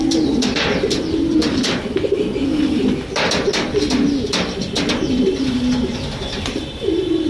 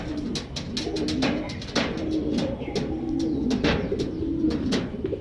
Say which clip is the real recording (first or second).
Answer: second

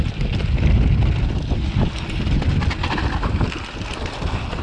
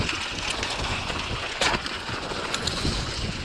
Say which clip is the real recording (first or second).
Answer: first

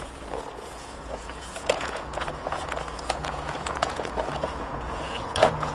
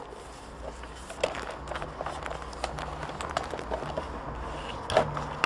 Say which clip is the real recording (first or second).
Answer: second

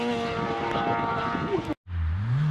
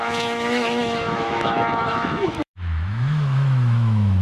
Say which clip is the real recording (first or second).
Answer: first